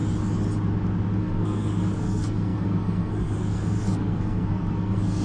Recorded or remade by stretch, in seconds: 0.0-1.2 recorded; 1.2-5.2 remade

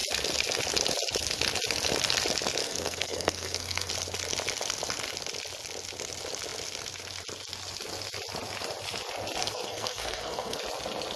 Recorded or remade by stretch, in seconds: 0.0-2.6 recorded; 2.6-3.9 remade; 3.9-9.4 recorded; 9.4-10.6 remade; 10.6-11.2 recorded